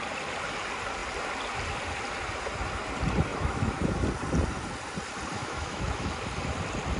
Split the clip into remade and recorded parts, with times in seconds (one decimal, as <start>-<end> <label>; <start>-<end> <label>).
0.0-3.3 recorded; 3.3-3.9 remade; 3.9-5.4 recorded; 5.4-6.1 remade; 6.1-7.0 recorded